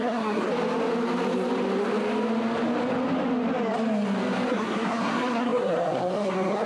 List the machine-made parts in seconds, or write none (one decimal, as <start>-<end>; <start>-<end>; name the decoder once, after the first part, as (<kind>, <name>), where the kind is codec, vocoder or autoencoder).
0.0-0.5 (codec, SNAC); 4.5-6.7